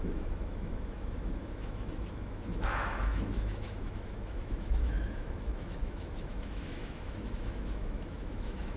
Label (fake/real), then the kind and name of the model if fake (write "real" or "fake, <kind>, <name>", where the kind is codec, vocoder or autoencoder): fake, autoencoder, DAC-VAE